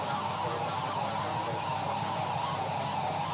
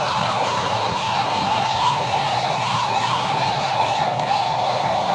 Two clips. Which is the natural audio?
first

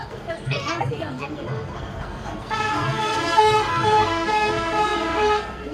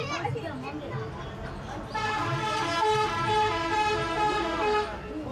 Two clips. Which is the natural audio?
second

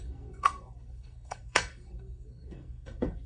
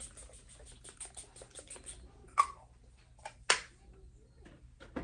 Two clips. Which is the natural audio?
second